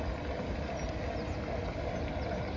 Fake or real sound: real